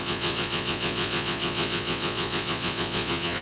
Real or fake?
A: fake